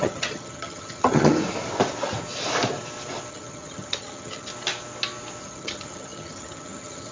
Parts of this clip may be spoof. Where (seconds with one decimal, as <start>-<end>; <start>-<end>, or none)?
0.0-1.4; 3.3-4.5; 5.4-7.1